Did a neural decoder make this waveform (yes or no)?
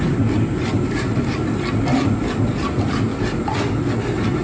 no